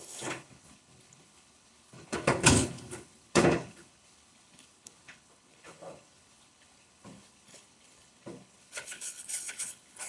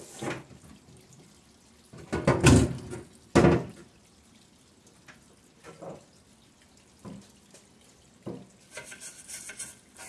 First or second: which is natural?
second